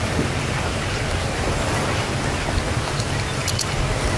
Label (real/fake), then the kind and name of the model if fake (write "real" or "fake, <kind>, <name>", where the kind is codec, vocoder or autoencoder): real